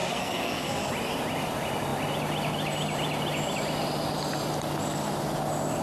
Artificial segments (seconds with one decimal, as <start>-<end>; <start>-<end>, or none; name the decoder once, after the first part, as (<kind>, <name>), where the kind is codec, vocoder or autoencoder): 0.0-0.9 (codec, SNAC)